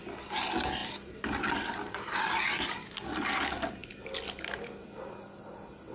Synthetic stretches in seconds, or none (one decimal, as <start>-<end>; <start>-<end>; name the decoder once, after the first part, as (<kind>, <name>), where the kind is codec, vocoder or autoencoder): none